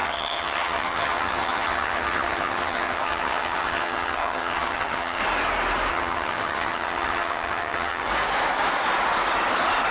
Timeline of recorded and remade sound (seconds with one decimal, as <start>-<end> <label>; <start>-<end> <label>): 0.0-5.2 remade; 5.2-5.9 recorded; 5.9-8.1 remade; 8.1-9.9 recorded